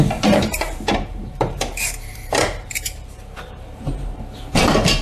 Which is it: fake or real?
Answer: fake